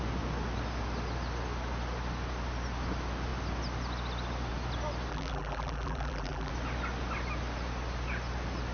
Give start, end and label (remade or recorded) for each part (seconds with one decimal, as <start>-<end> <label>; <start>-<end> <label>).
0.0-5.1 recorded; 5.1-6.5 remade; 6.5-8.7 recorded

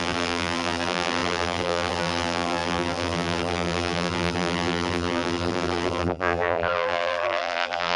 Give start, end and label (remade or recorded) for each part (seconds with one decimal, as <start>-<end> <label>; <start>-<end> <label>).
0.0-8.0 remade

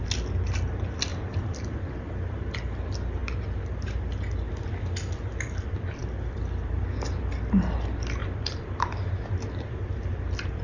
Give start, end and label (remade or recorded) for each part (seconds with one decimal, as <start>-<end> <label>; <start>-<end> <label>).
0.0-1.1 recorded; 1.1-2.7 remade; 2.7-6.0 recorded; 6.0-7.2 remade; 7.2-8.2 recorded; 8.2-10.6 remade

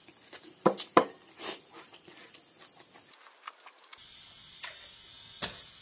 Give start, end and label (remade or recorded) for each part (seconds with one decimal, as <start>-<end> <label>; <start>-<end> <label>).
0.0-2.9 remade; 2.9-3.9 recorded; 3.9-4.7 remade; 4.7-5.8 recorded

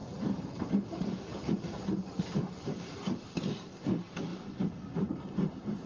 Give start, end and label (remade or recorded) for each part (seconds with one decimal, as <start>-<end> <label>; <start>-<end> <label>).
0.0-0.8 remade; 0.8-1.3 recorded; 1.3-3.2 remade; 3.2-4.3 recorded; 4.3-5.9 remade